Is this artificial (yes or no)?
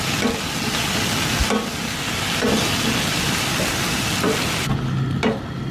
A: no